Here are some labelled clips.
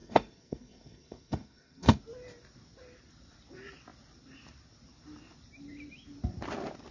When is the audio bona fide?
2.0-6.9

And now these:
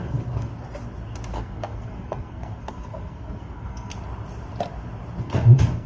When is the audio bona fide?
0.5-1.3; 3.9-5.2

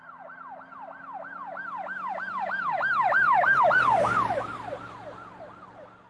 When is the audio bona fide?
0.0-6.1

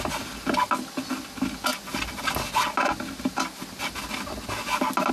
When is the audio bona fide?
0.0-5.1

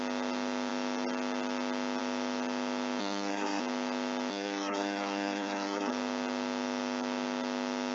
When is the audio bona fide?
0.0-3.0; 3.6-4.3; 5.9-7.9

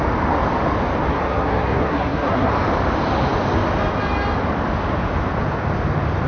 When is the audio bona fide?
0.0-1.1; 2.5-6.3

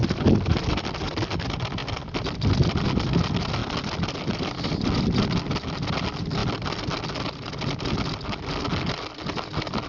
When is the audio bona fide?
0.0-9.9

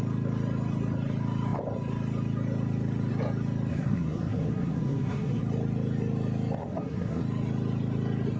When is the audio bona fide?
0.0-3.7; 5.4-6.6; 7.2-8.4